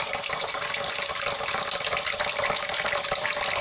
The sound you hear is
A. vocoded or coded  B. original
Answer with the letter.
B